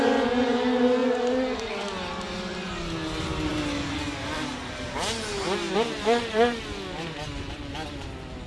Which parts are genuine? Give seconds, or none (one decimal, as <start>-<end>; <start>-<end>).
0.0-8.5